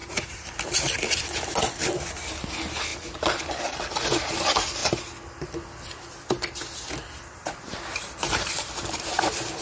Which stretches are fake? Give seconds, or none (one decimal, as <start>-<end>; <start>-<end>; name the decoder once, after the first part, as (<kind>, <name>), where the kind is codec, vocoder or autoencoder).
0.0-1.4 (vocoder, BigVGAN v2); 7.4-9.2